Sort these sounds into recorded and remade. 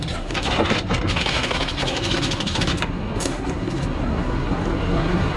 remade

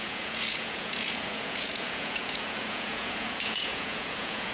remade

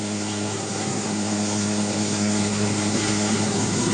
remade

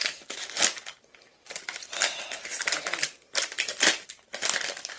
recorded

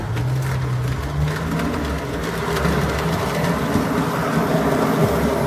recorded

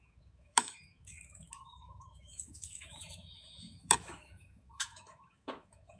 remade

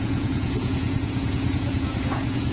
remade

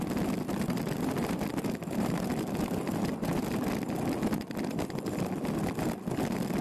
recorded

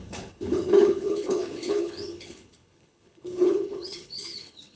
remade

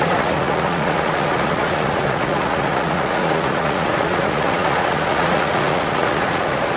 remade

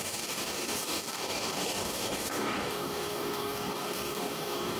remade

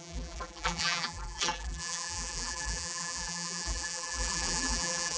remade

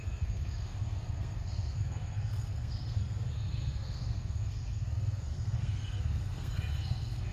remade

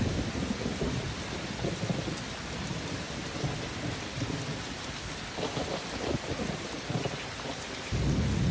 recorded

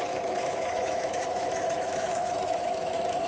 remade